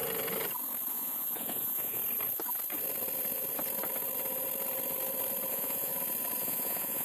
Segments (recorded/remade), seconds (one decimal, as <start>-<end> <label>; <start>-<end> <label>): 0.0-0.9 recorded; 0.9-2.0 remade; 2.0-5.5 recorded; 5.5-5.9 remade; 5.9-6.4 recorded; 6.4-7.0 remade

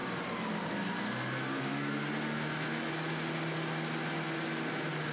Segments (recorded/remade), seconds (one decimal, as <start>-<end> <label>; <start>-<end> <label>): 0.0-5.1 recorded

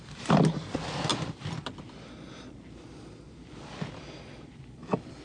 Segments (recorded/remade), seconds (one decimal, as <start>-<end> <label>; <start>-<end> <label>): 0.0-5.2 recorded